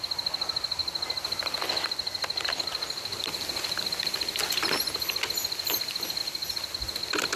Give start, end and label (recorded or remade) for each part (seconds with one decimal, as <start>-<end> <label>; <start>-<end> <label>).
0.0-6.2 recorded; 6.2-6.7 remade; 6.7-7.4 recorded